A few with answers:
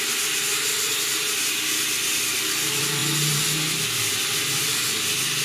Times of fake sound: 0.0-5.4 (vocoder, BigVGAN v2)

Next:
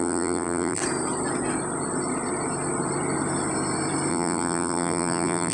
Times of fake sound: 0.0-0.8 (vocoder, BigVGAN v2); 4.1-5.5

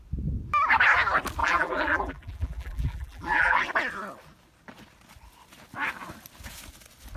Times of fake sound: 1.4-3.6 (vocoder, BigVGAN v2)

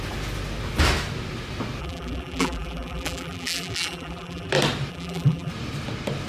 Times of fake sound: 1.8-4.5 (vocoder, BigVGAN v2); 4.9-5.5

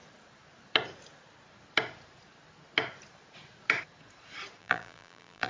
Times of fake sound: 4.6-5.5 (vocoder, BigVGAN v2)

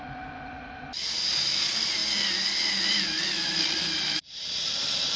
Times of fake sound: 0.0-5.2 (vocoder, BigVGAN v2)